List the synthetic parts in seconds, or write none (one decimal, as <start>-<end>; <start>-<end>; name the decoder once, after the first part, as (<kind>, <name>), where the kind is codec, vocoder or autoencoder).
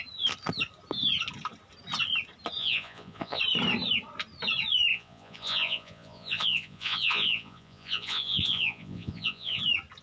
2.6-3.4 (vocoder, Vocos); 4.9-9.6